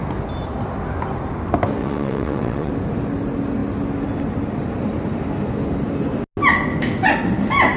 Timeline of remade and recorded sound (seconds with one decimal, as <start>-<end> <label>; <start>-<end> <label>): 0.0-1.8 recorded; 1.8-2.7 remade; 2.7-7.8 recorded